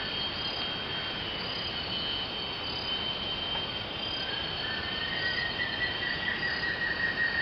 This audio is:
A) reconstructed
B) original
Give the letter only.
B